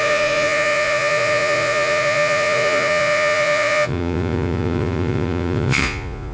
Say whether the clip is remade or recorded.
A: remade